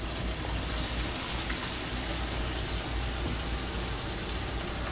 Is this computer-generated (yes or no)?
no